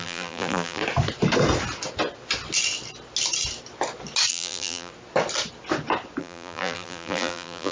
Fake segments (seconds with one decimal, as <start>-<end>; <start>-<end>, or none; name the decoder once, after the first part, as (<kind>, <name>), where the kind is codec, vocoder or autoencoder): 0.0-0.8 (vocoder, BigVGAN v2); 4.3-4.9; 6.2-7.7